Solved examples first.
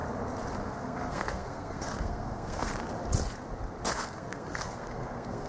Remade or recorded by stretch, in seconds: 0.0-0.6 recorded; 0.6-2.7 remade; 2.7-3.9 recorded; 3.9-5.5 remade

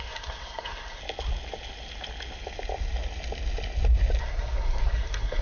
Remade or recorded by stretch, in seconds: 0.0-1.0 remade; 1.0-4.2 recorded; 4.2-5.4 remade

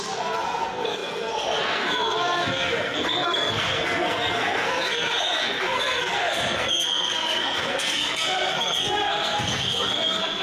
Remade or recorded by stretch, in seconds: 0.0-10.4 remade

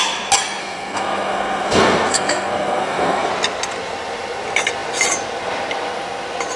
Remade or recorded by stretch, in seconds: 0.0-0.6 recorded; 0.6-3.3 remade; 3.3-6.6 recorded

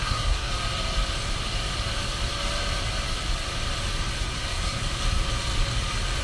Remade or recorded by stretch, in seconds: 0.0-0.5 remade; 0.5-4.2 recorded; 4.2-4.8 remade; 4.8-6.2 recorded